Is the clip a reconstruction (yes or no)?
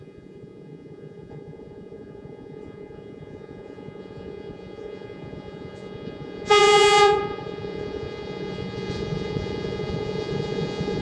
yes